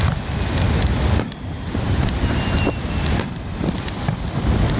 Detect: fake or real real